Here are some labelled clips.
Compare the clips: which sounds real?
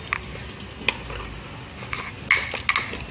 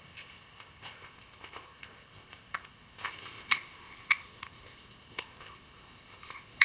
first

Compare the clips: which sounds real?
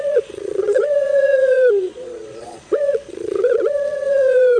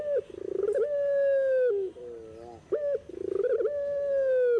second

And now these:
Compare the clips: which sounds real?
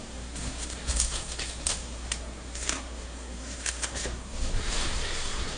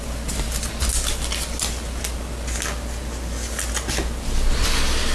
second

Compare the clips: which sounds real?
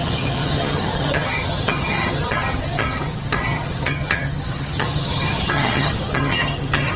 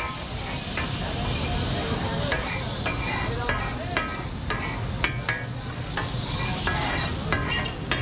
second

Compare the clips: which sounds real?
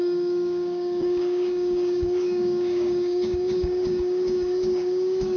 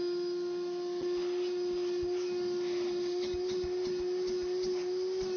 second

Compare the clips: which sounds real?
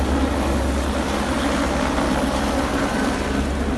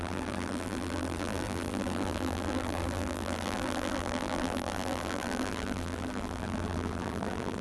first